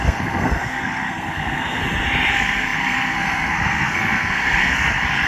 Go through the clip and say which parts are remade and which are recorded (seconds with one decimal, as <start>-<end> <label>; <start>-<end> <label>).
0.0-1.8 remade; 1.8-2.3 recorded; 2.3-5.3 remade